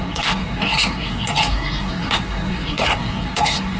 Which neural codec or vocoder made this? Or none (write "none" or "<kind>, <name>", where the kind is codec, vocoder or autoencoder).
codec, SNAC